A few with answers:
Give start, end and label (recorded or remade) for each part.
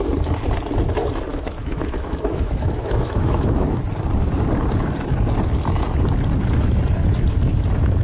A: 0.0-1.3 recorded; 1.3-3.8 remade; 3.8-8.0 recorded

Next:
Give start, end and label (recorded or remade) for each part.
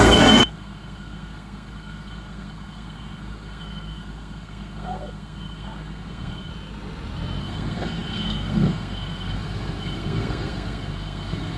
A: 0.0-6.5 remade; 6.5-7.4 recorded; 7.4-11.6 remade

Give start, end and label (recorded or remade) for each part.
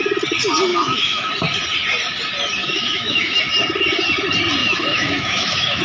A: 0.0-0.7 recorded; 0.7-1.3 remade; 1.3-2.6 recorded; 2.6-3.4 remade; 3.4-4.6 recorded; 4.6-5.8 remade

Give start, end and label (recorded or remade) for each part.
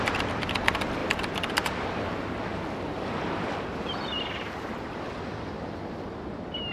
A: 0.0-6.7 recorded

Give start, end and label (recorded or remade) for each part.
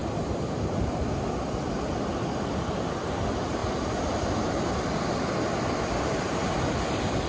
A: 0.0-7.3 recorded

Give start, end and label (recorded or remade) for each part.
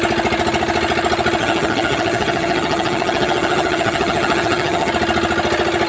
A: 0.0-1.4 recorded; 1.4-4.9 remade; 4.9-5.9 recorded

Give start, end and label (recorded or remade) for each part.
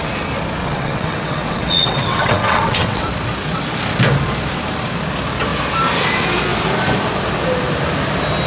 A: 0.0-0.6 recorded; 0.6-3.1 remade; 3.1-8.5 recorded